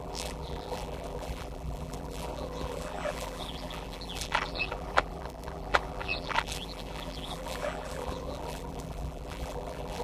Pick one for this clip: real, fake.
fake